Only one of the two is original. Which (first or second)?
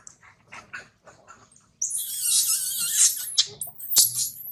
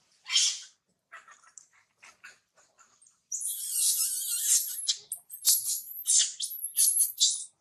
first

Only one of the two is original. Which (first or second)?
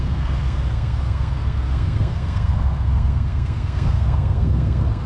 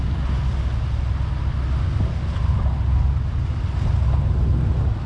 second